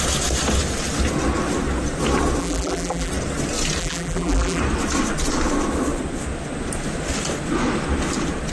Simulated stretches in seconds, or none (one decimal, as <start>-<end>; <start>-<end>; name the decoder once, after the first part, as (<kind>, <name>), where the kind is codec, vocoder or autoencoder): 2.4-3.1 (vocoder, BigVGAN v2); 3.8-4.6